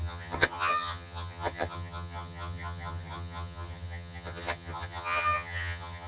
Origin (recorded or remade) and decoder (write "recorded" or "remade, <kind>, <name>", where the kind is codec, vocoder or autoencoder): remade, vocoder, HiFi-GAN